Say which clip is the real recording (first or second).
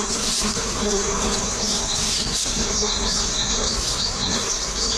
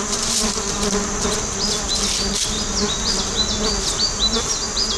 second